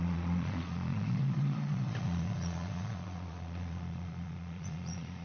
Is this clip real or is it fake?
fake